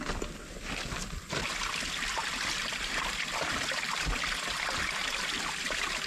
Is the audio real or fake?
real